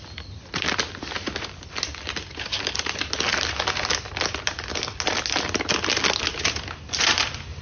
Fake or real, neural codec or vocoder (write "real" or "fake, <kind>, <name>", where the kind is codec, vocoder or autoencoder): real